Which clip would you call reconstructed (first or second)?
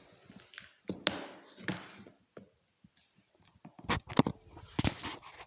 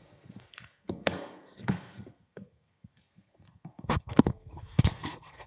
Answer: second